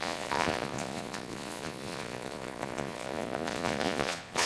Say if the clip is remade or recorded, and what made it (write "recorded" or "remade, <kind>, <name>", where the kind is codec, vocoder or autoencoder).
remade, vocoder, Vocos